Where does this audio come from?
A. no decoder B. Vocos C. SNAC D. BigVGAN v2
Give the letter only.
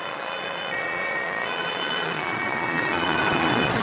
B